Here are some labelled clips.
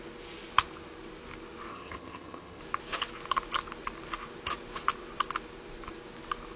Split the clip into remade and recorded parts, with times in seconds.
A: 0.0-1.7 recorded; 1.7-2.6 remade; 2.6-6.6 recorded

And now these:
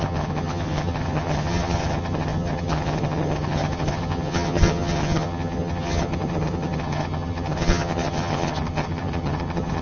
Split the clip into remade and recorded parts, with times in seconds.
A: 0.0-9.8 remade

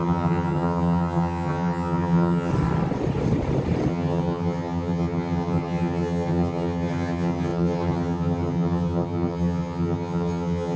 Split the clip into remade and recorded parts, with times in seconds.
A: 0.0-2.5 remade; 2.5-3.9 recorded; 3.9-10.8 remade

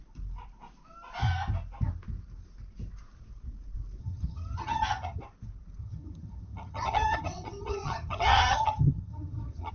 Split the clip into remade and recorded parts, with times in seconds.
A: 0.0-4.0 recorded; 4.0-5.2 remade; 5.2-5.8 recorded; 5.8-9.7 remade

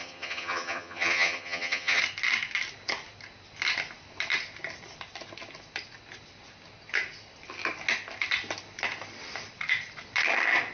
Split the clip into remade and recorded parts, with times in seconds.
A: 0.0-2.0 remade; 2.0-10.7 recorded